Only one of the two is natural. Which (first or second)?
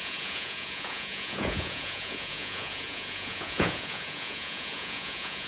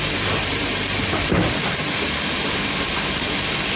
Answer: second